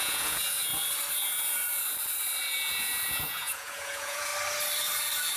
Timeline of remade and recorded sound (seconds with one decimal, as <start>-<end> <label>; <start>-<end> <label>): 0.0-0.7 remade; 0.7-2.7 recorded; 2.7-4.3 remade; 4.3-5.4 recorded